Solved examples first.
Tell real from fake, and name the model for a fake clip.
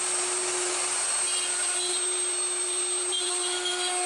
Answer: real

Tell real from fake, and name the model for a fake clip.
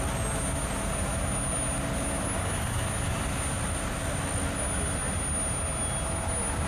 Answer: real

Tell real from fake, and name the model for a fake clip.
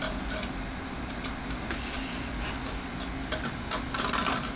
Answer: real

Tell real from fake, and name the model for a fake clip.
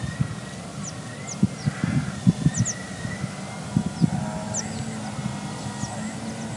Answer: real